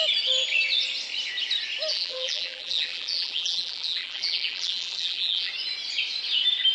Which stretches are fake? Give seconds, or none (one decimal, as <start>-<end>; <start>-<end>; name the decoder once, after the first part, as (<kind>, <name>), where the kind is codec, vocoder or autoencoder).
1.9-5.5 (vocoder, BigVGAN v2)